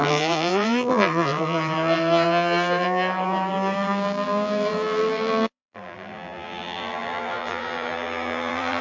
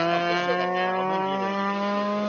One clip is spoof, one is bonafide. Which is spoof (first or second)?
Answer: first